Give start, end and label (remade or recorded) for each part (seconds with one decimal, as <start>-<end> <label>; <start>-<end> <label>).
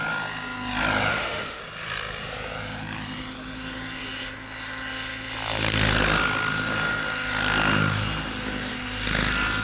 0.0-1.1 recorded; 1.1-1.6 remade; 1.6-9.6 recorded